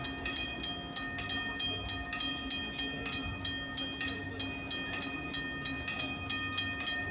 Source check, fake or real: real